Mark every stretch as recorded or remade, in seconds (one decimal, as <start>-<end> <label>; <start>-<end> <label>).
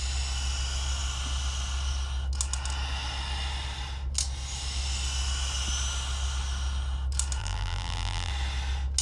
0.0-7.4 recorded; 7.4-8.3 remade; 8.3-9.0 recorded